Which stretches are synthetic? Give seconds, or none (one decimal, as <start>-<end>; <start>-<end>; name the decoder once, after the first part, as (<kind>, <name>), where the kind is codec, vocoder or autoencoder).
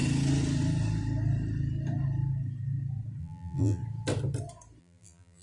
3.2-3.8 (vocoder, BigVGAN v2); 4.8-5.4